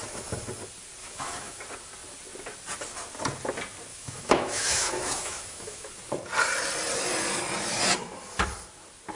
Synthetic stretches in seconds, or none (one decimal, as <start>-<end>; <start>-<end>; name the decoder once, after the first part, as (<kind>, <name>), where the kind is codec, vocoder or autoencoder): 1.0-1.6 (autoencoder, DAC-VAE); 3.9-5.9